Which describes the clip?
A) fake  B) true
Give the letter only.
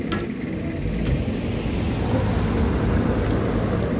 B